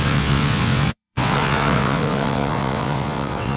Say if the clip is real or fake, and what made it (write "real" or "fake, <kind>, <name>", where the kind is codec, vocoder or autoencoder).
fake, vocoder, WaveNeXt